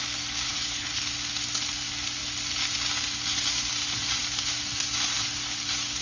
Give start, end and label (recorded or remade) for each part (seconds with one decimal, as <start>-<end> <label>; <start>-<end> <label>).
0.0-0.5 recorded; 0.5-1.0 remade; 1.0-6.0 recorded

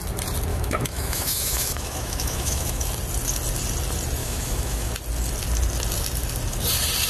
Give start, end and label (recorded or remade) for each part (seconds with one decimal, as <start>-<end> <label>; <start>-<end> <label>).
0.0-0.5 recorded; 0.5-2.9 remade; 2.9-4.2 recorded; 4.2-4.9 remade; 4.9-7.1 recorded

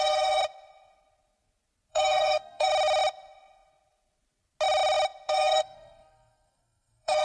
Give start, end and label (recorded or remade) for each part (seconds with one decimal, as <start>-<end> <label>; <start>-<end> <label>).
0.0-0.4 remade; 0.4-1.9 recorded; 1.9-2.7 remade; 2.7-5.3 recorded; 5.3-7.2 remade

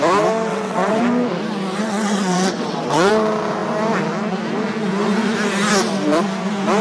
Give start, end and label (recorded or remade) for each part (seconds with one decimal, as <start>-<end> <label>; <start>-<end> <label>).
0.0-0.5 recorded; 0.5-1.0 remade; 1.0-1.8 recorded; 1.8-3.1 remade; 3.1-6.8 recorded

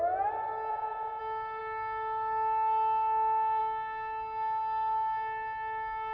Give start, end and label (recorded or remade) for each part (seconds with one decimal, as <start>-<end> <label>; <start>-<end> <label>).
0.0-0.7 recorded; 0.7-1.2 remade; 1.2-6.1 recorded

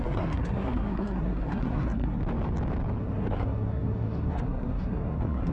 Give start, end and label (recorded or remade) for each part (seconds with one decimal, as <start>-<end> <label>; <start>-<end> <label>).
0.0-2.2 remade; 2.2-3.0 recorded; 3.0-5.5 remade

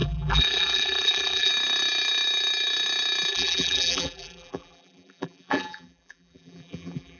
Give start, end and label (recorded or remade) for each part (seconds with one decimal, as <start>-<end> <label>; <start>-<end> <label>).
0.0-1.5 remade; 1.5-3.3 recorded; 3.3-7.2 remade